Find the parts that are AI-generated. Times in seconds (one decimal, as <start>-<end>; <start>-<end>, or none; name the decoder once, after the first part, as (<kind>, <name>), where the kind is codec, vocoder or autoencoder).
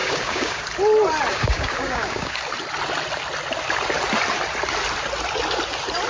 0.0-0.6 (codec, DAC); 1.3-2.4